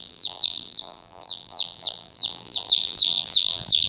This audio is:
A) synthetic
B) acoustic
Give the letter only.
A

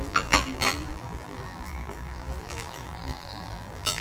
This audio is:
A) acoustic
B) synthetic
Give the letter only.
B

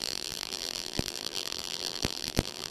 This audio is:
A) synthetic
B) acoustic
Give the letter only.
A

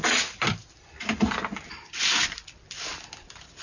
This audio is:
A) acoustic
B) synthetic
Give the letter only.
B